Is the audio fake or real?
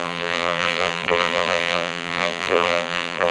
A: fake